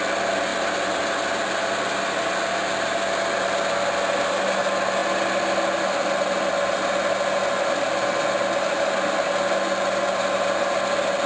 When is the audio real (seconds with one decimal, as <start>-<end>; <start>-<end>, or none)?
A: 0.0-11.3